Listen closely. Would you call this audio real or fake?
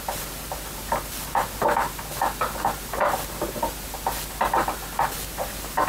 real